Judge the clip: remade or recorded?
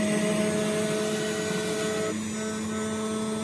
recorded